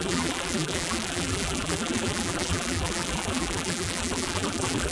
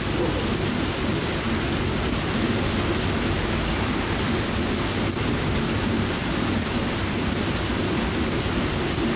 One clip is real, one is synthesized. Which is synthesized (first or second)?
first